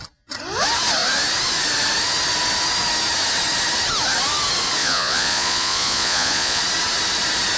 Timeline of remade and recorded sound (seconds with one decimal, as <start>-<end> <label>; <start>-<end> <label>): 0.0-4.8 recorded; 4.8-6.6 remade; 6.6-7.6 recorded